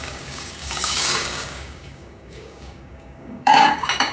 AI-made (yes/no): yes